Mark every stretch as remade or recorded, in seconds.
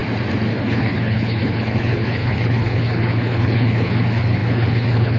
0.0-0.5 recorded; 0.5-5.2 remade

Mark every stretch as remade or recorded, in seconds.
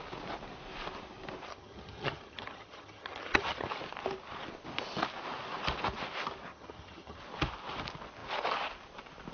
0.0-1.5 recorded; 1.5-3.7 remade; 3.7-6.5 recorded; 6.5-7.2 remade; 7.2-9.3 recorded